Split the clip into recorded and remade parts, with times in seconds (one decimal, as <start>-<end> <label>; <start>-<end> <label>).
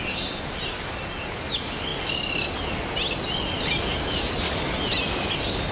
0.0-5.7 recorded